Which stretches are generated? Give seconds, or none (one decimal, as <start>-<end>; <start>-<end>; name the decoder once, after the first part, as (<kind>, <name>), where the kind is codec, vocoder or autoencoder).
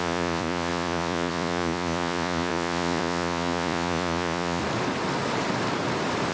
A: 0.0-4.6 (vocoder, Vocos)